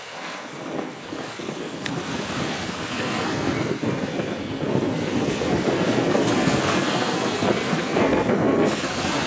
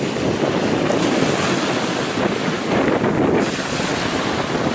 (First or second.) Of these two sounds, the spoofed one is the first